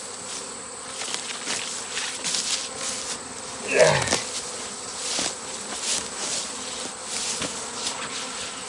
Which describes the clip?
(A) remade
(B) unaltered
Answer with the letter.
B